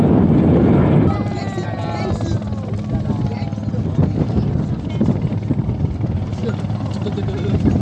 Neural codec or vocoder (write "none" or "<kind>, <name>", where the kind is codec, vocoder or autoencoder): none